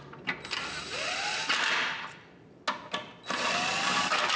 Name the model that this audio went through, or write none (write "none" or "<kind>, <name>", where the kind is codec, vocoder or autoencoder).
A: none